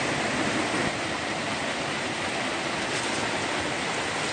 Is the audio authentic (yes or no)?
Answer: yes